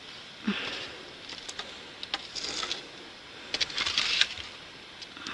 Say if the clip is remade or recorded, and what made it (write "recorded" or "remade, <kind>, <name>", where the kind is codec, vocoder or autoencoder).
recorded